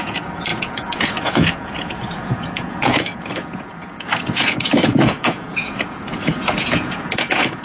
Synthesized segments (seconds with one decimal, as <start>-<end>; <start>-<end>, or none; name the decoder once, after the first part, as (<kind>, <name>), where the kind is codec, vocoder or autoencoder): 0.0-7.6 (vocoder, Vocos)